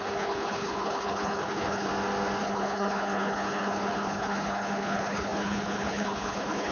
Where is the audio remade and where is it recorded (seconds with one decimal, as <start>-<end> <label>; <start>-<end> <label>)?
0.0-1.9 remade; 1.9-2.4 recorded; 2.4-6.7 remade